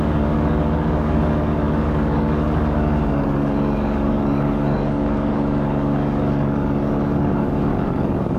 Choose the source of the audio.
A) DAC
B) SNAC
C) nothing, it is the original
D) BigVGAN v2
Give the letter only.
A